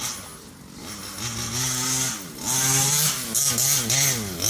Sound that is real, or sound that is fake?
real